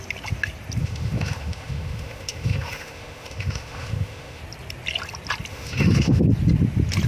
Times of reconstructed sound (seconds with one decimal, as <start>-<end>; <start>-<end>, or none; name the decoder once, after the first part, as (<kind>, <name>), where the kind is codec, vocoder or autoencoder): 0.8-4.4 (autoencoder, DAC-VAE); 5.5-6.2